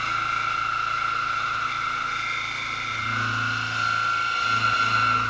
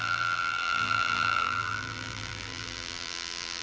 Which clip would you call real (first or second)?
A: first